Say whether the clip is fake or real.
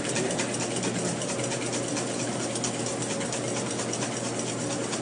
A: real